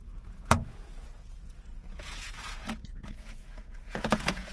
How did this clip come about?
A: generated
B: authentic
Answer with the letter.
A